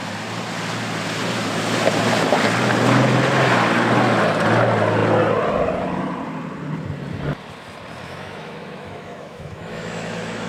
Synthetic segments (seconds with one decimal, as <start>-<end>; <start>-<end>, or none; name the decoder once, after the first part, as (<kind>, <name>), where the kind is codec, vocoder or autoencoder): 8.0-10.5 (autoencoder, DAC-VAE)